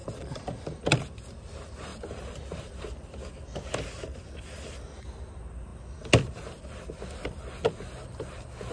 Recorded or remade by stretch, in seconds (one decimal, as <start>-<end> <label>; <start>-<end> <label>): 0.0-0.6 remade; 0.6-8.7 recorded